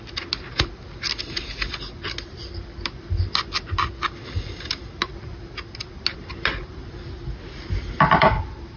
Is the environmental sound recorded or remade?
recorded